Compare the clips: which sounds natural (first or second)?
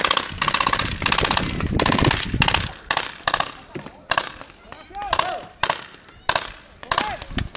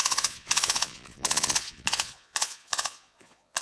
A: first